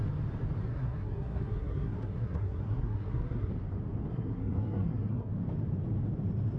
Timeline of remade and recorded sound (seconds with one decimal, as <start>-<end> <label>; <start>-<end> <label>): 0.0-0.7 recorded; 0.7-3.5 remade; 3.5-4.1 recorded; 4.1-5.3 remade; 5.3-6.6 recorded